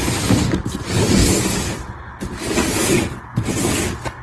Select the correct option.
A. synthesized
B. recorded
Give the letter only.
B